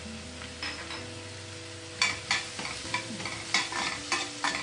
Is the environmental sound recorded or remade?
recorded